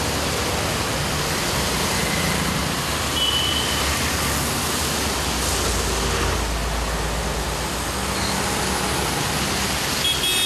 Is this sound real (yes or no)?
yes